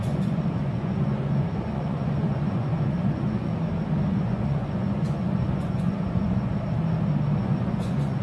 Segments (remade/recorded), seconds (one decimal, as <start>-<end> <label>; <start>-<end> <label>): 0.0-3.5 remade; 3.5-4.1 recorded; 4.1-6.5 remade; 6.5-7.4 recorded; 7.4-8.2 remade